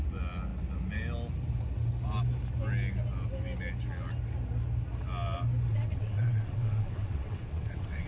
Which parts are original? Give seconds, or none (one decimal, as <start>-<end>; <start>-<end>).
0.0-5.7